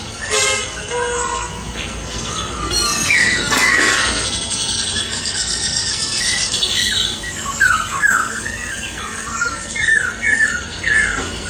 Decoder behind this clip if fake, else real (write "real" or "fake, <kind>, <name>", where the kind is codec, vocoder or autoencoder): fake, codec, SNAC